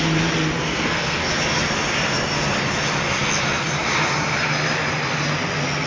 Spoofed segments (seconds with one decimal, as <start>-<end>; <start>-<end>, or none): 0.6-1.2